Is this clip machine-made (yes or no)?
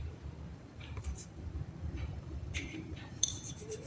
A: yes